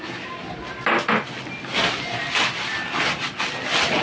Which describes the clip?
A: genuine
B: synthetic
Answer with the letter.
A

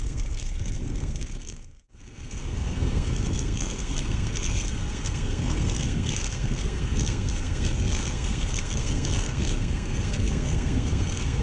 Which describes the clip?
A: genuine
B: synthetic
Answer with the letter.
B